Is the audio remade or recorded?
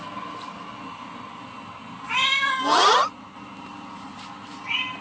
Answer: recorded